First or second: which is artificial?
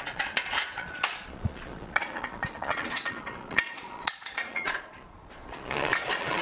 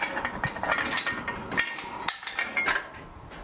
first